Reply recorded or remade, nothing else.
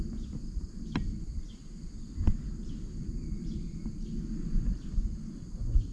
recorded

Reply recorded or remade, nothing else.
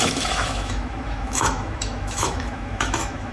remade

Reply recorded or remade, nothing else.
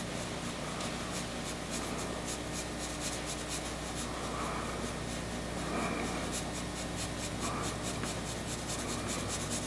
recorded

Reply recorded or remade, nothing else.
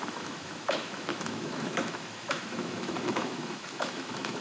remade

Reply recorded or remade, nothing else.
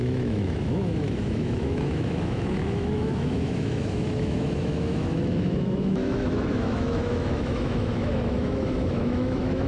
remade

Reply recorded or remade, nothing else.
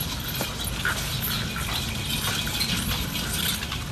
recorded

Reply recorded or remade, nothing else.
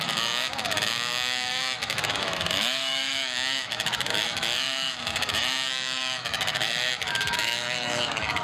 remade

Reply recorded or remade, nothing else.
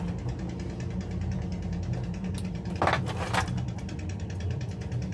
recorded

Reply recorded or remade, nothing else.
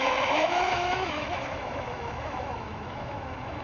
remade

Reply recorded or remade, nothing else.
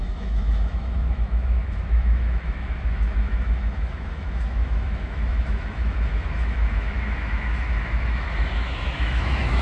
remade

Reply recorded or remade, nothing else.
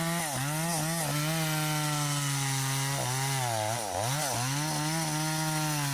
recorded